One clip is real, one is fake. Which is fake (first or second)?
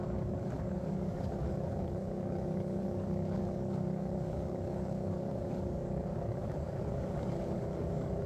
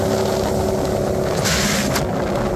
first